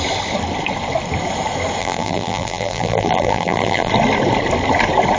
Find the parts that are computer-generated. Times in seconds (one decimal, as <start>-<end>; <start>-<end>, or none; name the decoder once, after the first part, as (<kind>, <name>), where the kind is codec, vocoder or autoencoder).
1.8-3.9 (vocoder, BigVGAN v2)